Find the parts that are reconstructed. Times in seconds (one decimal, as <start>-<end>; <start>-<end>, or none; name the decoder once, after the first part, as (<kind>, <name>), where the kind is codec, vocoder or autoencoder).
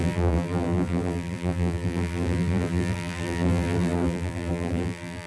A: 0.0-5.3 (vocoder, BigVGAN v2)